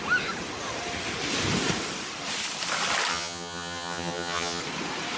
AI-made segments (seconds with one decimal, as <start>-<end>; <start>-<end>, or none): 3.1-4.6